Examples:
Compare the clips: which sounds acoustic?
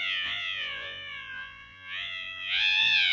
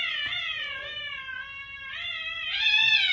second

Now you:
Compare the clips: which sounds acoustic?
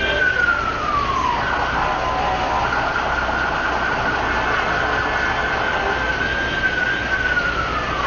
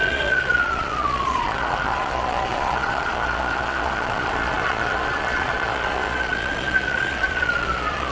first